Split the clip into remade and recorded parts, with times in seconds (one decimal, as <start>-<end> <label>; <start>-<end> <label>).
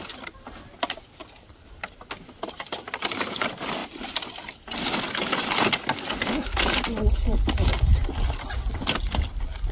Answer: 0.0-9.7 recorded